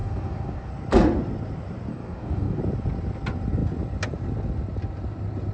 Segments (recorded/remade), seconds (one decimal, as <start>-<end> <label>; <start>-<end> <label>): 0.0-0.7 remade; 0.7-1.9 recorded; 1.9-2.6 remade; 2.6-5.5 recorded